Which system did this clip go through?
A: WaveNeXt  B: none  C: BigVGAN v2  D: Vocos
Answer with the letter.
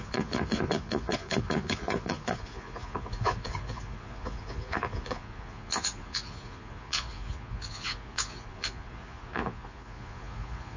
D